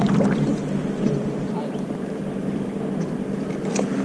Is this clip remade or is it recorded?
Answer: recorded